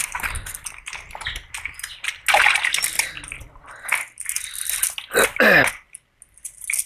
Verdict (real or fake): real